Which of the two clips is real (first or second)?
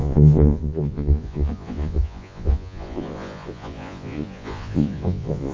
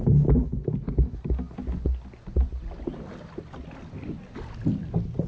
second